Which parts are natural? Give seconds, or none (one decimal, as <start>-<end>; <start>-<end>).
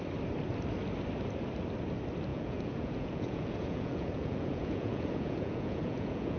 0.0-2.3